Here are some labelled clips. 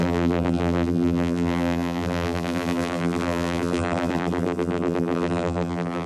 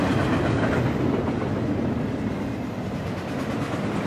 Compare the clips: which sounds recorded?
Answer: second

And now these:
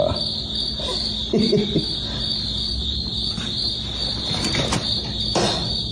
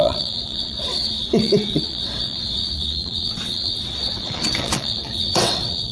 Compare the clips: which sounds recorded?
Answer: first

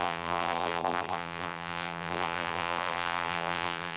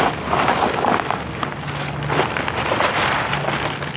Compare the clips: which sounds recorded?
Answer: second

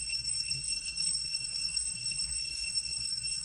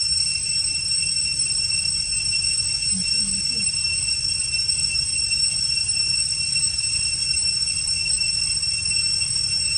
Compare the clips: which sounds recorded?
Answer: second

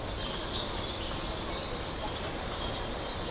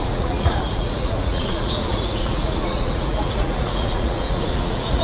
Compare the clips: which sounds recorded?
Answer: first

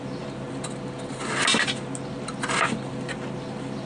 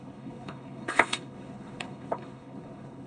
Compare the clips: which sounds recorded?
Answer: first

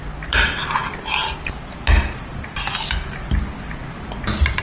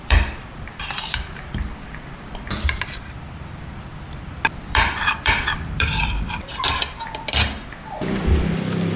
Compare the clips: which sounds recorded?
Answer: first